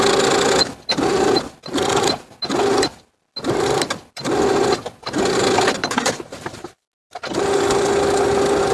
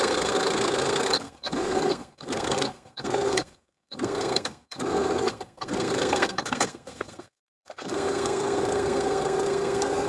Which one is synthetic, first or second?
second